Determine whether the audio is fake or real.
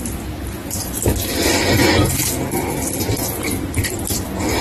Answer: real